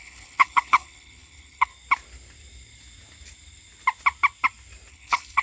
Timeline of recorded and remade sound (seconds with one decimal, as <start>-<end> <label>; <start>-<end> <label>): 0.0-1.7 remade; 1.7-4.9 recorded; 4.9-5.4 remade